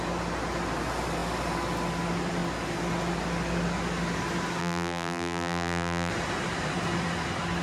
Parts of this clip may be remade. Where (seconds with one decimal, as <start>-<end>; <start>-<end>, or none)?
4.6-6.1